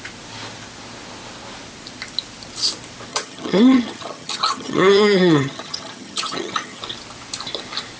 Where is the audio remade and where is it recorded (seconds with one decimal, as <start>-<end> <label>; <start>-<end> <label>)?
0.0-3.1 recorded; 3.1-6.8 remade; 6.8-8.0 recorded